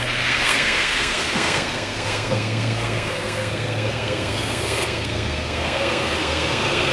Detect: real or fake fake